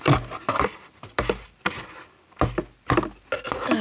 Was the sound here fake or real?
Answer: real